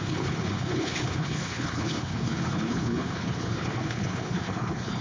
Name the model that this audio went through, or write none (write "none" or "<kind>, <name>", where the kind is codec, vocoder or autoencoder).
codec, HILCodec